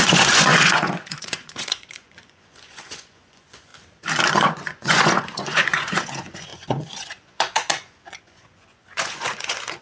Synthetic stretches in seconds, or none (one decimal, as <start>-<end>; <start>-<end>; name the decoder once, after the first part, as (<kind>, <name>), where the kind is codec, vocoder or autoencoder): 0.0-3.7 (vocoder, Vocos); 4.3-9.8